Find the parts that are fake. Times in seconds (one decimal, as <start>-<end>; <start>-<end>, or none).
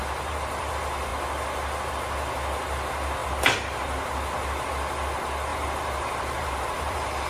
0.0-0.7; 5.5-7.3